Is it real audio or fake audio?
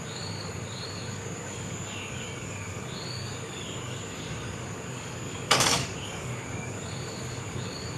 fake